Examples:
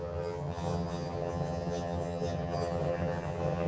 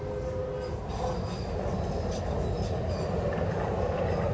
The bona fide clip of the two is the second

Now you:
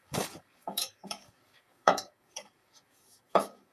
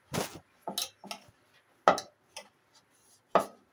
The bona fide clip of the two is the second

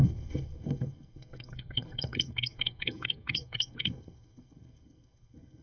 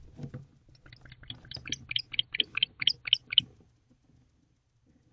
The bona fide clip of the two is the second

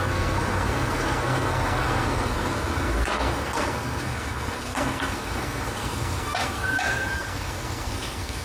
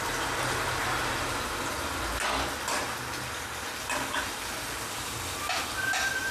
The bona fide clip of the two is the second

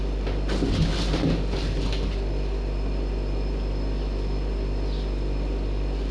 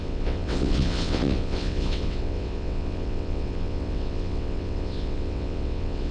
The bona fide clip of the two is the first